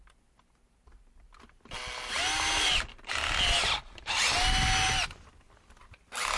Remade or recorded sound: recorded